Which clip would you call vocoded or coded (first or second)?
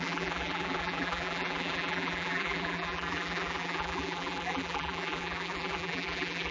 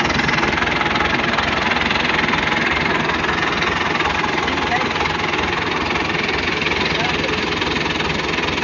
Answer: first